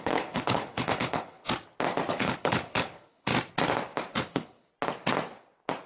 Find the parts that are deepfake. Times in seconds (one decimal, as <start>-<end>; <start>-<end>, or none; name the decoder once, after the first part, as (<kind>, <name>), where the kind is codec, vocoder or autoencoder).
0.0-1.4 (codec, HILCodec); 2.1-3.3; 4.1-4.7